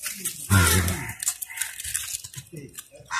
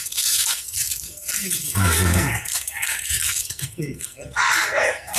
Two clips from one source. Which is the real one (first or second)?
first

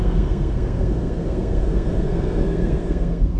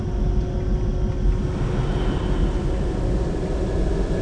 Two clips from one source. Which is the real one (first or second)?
second